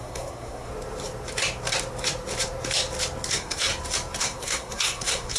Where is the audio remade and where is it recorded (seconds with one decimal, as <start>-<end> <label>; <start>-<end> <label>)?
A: 0.0-0.7 remade; 0.7-3.3 recorded; 3.3-3.7 remade; 3.7-4.2 recorded; 4.2-5.4 remade